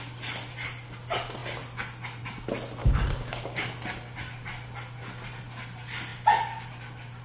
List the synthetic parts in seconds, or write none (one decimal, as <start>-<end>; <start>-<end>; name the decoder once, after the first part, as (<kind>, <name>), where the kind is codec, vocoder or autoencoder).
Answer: 2.8-3.7 (codec, DAC)